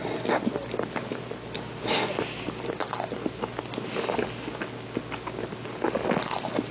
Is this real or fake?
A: real